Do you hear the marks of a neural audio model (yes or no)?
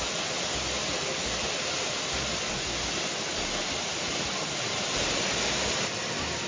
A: no